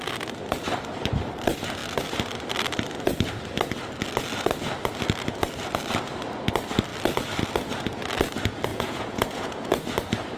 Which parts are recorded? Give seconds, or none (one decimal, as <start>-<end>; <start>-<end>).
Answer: 0.0-8.7; 9.7-10.4